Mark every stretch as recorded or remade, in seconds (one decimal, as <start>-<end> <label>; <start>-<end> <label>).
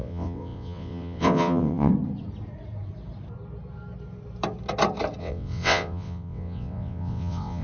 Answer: 0.0-1.9 remade; 1.9-5.2 recorded; 5.2-7.6 remade